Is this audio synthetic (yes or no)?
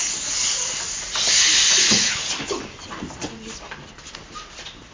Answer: no